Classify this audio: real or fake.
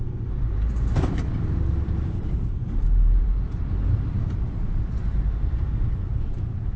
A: fake